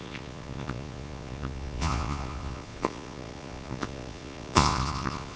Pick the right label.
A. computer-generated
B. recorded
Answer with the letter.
A